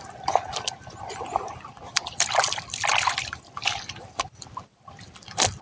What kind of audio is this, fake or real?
fake